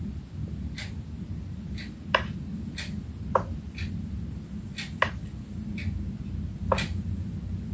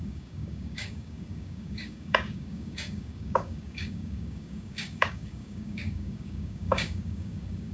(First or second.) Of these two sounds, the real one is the first